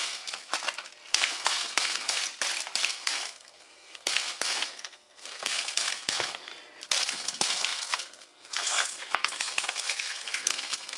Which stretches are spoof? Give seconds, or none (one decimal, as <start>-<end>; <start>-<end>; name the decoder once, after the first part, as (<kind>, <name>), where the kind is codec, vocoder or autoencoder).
0.0-0.5 (codec, SNAC); 1.1-2.2; 2.8-6.5; 7.0-11.0